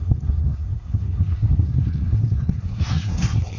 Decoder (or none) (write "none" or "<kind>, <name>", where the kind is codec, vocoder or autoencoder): codec, SNAC